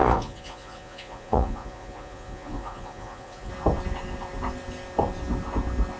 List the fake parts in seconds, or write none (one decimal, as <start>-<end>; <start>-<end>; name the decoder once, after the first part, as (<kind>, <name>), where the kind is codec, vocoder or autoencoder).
0.0-3.5 (vocoder, Vocos)